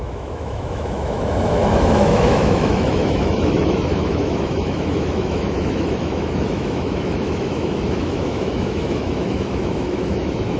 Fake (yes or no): yes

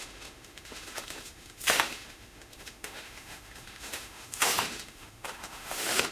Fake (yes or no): yes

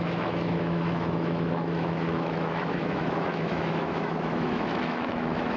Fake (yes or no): yes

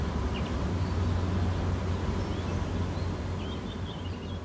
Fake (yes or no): no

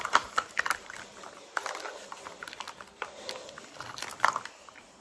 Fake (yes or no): yes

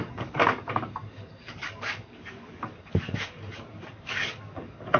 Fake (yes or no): yes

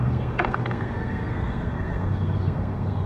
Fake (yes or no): yes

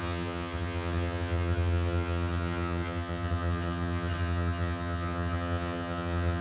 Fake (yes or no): yes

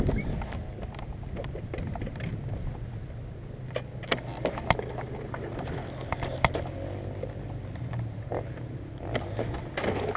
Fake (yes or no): no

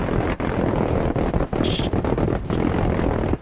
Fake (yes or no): no